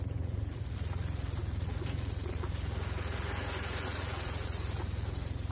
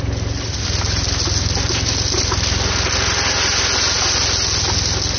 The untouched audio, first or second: second